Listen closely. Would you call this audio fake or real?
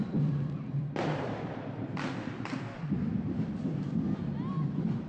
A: fake